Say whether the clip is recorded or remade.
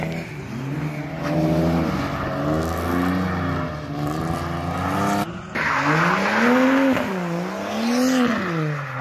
recorded